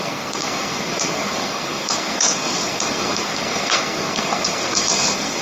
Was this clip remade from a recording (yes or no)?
yes